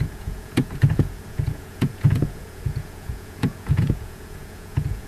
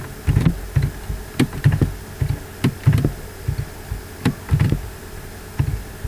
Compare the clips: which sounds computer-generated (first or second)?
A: first